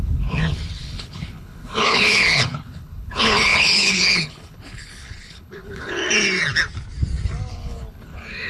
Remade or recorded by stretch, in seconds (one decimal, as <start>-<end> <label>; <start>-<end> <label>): 0.0-6.0 remade; 6.0-7.5 recorded; 7.5-8.5 remade